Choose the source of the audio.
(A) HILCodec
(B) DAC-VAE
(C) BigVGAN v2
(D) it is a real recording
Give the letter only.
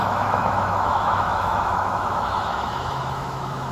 B